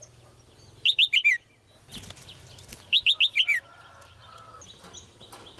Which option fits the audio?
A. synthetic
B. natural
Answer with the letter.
B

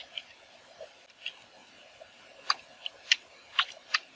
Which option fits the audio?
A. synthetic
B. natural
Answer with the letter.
B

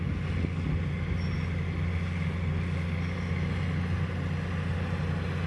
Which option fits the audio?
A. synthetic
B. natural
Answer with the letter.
B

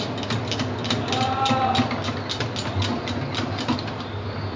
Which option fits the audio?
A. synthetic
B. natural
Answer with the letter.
B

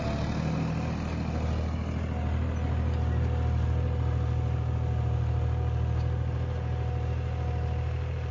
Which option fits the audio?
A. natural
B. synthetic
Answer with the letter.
A